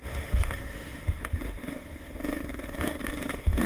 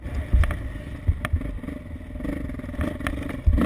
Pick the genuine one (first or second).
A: second